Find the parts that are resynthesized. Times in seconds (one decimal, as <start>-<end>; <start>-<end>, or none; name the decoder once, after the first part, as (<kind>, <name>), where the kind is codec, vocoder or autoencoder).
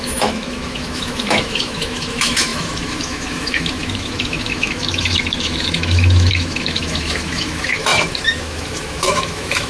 0.0-9.7 (autoencoder, DAC-VAE)